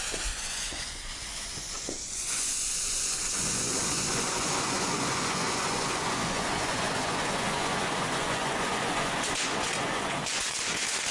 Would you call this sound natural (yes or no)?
no